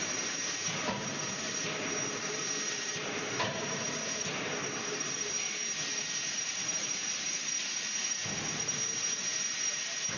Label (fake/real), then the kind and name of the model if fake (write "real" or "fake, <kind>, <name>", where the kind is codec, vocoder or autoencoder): fake, vocoder, BigVGAN v2